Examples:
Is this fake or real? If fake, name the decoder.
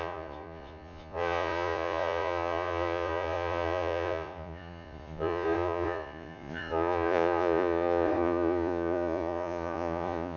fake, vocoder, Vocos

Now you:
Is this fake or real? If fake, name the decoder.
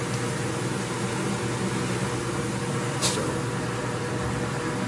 real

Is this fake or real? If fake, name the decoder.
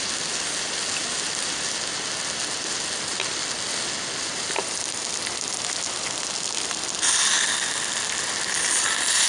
real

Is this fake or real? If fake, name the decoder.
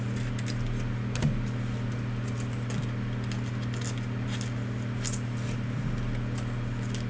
real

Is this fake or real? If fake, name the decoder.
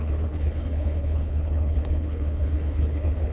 fake, codec, HILCodec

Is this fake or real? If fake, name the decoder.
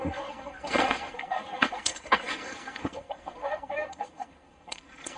fake, codec, SNAC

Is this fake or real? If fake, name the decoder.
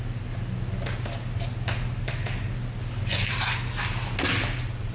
real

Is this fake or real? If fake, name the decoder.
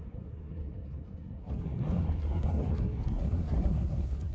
fake, codec, SNAC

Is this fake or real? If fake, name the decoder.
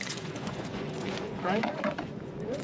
fake, vocoder, Vocos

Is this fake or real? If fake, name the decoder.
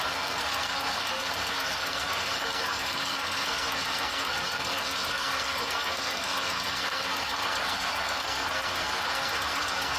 fake, codec, SNAC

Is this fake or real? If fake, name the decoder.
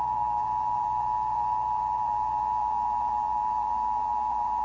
fake, vocoder, BigVGAN v2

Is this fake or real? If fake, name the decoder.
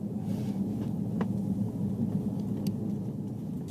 fake, vocoder, BigVGAN v2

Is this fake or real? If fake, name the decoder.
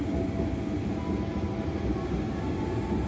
real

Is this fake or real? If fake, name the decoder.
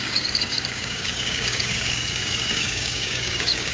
fake, codec, DAC